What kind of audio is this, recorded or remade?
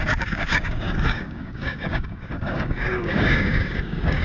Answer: remade